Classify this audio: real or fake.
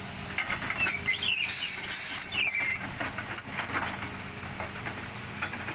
real